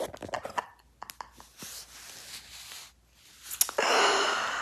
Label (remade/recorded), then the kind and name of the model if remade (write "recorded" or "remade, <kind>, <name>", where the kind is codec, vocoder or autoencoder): recorded